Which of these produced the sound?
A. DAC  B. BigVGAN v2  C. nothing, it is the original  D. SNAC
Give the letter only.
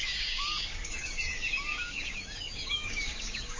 A